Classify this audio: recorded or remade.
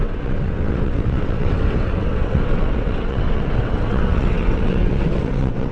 remade